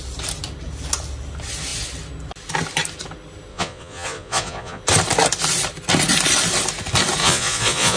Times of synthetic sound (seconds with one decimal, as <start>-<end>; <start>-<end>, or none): 3.5-4.8; 7.2-8.0